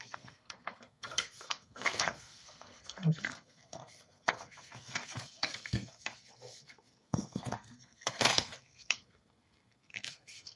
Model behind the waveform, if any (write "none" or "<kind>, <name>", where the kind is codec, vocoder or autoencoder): codec, SNAC